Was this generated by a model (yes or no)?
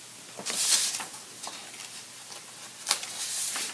no